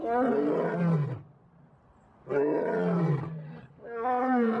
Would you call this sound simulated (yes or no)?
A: no